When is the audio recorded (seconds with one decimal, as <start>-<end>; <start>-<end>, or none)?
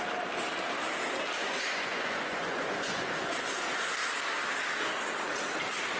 0.0-1.4; 3.6-6.0